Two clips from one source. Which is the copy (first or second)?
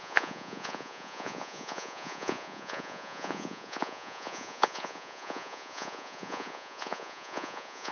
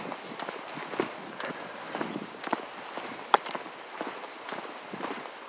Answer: first